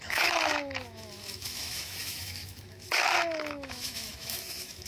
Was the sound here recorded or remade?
remade